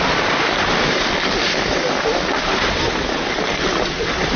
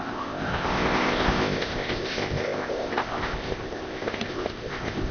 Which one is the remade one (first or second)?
second